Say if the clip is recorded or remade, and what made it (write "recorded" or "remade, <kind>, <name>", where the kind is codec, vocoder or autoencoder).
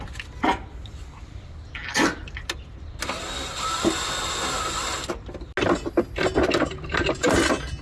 recorded